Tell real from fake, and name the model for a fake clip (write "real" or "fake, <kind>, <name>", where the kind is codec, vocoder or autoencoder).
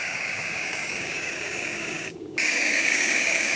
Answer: fake, codec, DAC